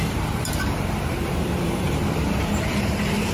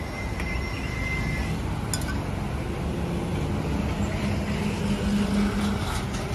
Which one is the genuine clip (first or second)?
second